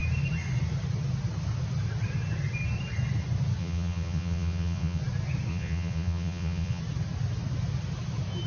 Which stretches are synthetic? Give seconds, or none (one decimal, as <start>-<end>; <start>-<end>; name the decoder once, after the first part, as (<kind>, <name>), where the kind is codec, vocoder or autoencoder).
3.6-5.0 (vocoder, Vocos); 5.5-6.8